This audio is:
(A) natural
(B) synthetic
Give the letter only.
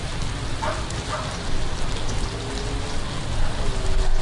A